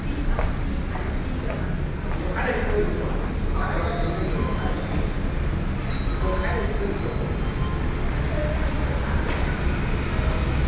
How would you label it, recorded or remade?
recorded